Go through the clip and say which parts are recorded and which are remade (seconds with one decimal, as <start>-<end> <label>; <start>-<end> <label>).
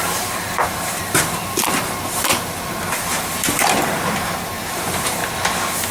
0.0-5.2 remade; 5.2-5.9 recorded